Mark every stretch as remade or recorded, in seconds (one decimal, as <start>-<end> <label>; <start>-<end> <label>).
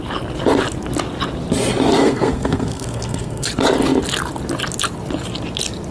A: 0.0-2.0 recorded; 2.0-3.5 remade; 3.5-5.9 recorded